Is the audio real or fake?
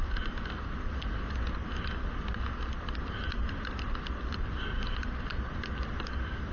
real